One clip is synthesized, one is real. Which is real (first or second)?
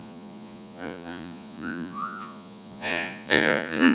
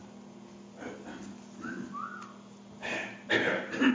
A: second